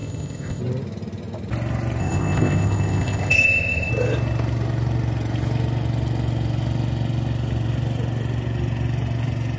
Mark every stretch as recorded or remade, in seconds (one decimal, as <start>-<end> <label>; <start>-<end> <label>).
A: 0.0-0.6 remade; 0.6-2.0 recorded; 2.0-3.9 remade; 3.9-9.6 recorded